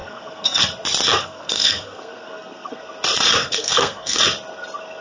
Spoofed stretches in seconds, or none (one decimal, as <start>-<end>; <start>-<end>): 0.0-0.6; 1.2-2.8; 3.4-4.2